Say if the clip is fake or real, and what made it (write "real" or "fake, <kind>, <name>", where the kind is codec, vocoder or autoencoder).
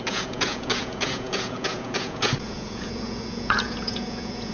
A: fake, vocoder, Vocos